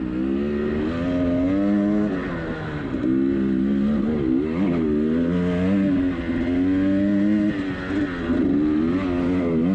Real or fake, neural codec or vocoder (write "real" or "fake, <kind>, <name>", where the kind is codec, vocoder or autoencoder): real